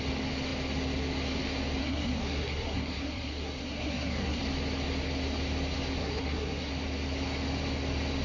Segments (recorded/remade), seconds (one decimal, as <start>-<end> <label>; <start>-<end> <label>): 0.0-1.8 recorded; 1.8-4.4 remade; 4.4-6.0 recorded; 6.0-6.7 remade; 6.7-8.2 recorded

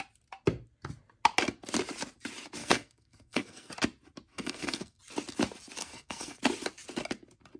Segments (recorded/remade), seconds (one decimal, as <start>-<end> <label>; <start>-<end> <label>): 0.0-2.6 recorded; 2.6-3.7 remade; 3.7-4.3 recorded; 4.3-5.0 remade; 5.0-5.8 recorded; 5.8-6.4 remade; 6.4-7.6 recorded

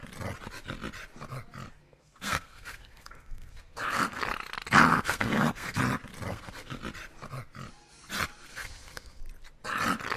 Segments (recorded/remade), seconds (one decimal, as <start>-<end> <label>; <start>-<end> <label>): 0.0-1.8 recorded; 1.8-4.2 remade; 4.2-4.9 recorded; 4.9-5.8 remade; 5.8-6.3 recorded; 6.3-6.8 remade; 6.8-8.5 recorded; 8.5-9.2 remade; 9.2-10.2 recorded